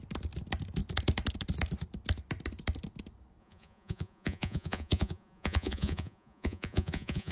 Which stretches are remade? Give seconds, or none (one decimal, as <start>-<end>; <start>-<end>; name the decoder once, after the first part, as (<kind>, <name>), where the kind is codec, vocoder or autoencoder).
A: 3.4-7.3 (vocoder, Vocos)